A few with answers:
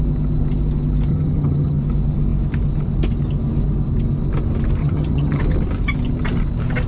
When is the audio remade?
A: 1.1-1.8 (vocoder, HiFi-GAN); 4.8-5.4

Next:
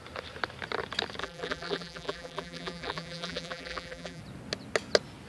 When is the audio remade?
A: 1.2-4.2 (vocoder, BigVGAN v2)

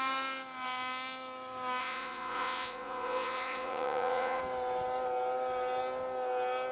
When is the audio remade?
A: 1.8-4.4 (vocoder, Vocos)

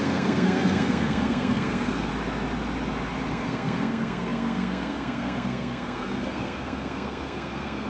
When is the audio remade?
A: 0.0-2.1 (codec, SNAC); 3.3-7.9

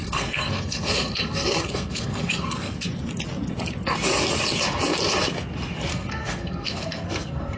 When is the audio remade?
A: 0.0-2.9 (codec, SNAC); 5.9-7.6

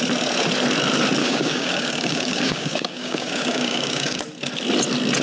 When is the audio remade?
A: 1.2-4.2 (codec, DAC)